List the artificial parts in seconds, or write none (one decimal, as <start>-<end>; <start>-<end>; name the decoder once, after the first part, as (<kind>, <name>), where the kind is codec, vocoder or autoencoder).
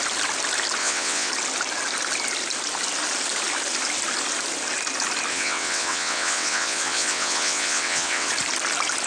0.8-1.3 (vocoder, WaveNeXt); 5.3-8.3